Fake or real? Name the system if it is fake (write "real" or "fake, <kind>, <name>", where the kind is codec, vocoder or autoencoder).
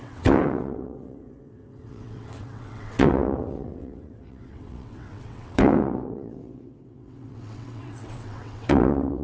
fake, vocoder, WaveNeXt